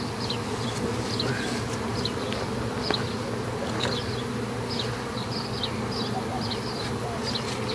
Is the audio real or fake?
real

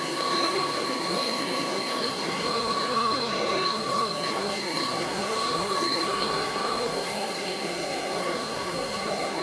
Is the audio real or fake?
fake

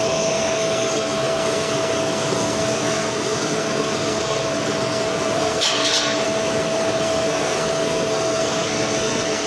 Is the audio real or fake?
fake